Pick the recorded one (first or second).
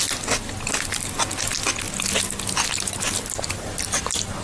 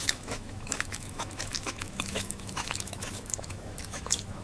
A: first